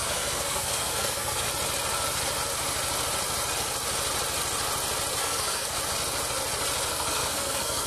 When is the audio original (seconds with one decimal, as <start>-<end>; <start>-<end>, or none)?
1.5-5.2; 5.8-6.9